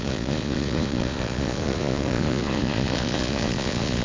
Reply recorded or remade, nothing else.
remade